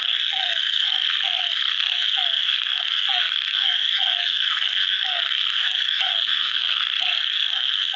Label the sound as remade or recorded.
remade